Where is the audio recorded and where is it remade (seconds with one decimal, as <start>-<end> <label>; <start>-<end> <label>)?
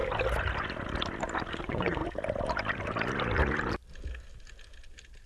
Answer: 0.0-1.6 recorded; 1.6-2.0 remade; 2.0-5.3 recorded